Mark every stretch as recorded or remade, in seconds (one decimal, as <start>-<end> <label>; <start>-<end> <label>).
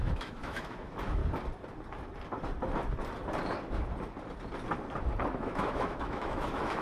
0.0-1.2 remade; 1.2-5.3 recorded; 5.3-6.8 remade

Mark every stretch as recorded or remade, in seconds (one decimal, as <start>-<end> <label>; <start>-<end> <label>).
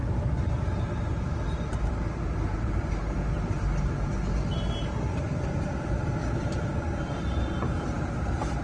0.0-8.6 remade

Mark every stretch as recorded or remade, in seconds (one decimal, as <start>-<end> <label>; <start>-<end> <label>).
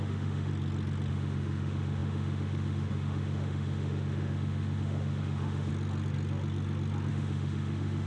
0.0-0.5 remade; 0.5-1.1 recorded; 1.1-5.7 remade; 5.7-7.1 recorded; 7.1-8.1 remade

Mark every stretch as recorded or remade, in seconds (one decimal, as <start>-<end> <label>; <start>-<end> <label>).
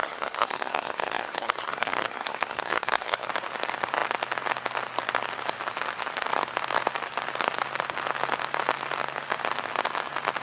0.0-3.3 remade; 3.3-10.4 recorded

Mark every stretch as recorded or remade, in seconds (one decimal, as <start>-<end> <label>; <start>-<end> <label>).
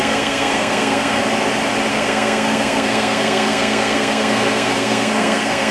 0.0-1.2 remade; 1.2-1.9 recorded; 1.9-5.7 remade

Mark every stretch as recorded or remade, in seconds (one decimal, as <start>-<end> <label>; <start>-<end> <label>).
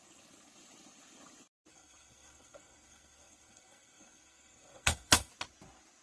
0.0-1.7 recorded; 1.7-5.3 remade; 5.3-6.0 recorded